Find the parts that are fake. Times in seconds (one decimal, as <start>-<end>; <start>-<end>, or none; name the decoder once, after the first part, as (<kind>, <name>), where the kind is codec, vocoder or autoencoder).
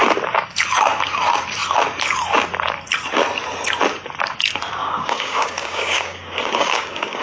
4.8-7.2 (codec, DAC)